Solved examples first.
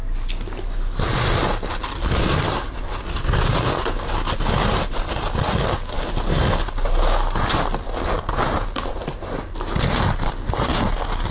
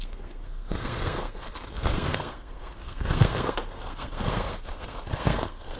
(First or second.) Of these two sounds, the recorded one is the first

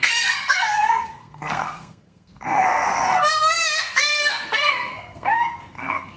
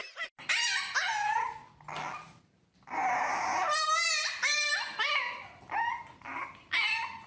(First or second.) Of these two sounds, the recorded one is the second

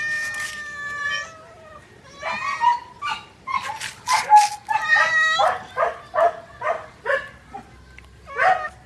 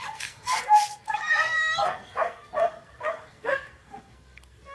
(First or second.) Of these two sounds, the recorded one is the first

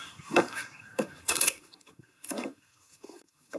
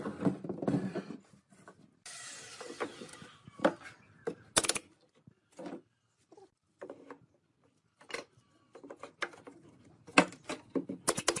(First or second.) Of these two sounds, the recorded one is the second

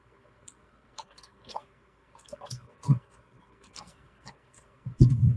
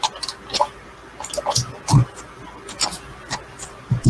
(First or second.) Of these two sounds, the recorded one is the second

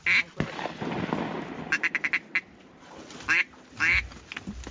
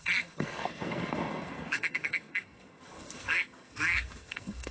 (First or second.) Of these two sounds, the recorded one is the first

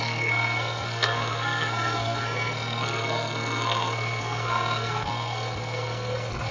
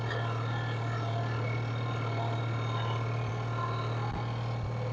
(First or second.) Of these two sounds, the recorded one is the second